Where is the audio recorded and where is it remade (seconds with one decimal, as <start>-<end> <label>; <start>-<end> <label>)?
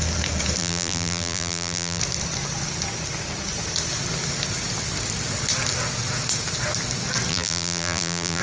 0.0-0.6 recorded; 0.6-2.0 remade; 2.0-7.3 recorded; 7.3-8.4 remade